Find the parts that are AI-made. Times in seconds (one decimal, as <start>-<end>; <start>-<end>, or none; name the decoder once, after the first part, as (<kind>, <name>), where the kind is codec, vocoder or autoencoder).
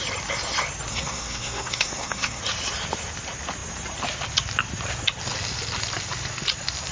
0.9-2.4 (codec, SNAC)